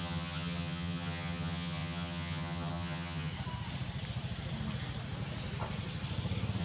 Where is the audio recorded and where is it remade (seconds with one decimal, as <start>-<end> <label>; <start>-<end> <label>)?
0.0-3.3 remade; 3.3-6.6 recorded